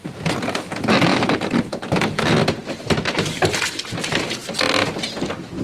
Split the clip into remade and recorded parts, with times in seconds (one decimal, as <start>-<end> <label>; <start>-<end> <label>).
0.0-1.1 recorded; 1.1-2.2 remade; 2.2-2.6 recorded; 2.6-3.7 remade; 3.7-5.6 recorded